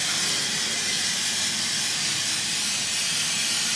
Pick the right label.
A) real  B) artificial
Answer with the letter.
A